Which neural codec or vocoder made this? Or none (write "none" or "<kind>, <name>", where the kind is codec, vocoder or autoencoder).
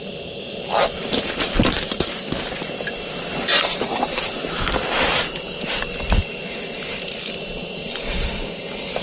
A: none